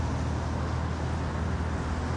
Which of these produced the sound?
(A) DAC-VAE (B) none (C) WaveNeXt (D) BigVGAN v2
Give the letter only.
B